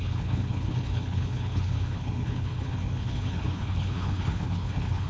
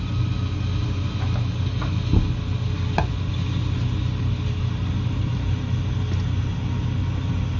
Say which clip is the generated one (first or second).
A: first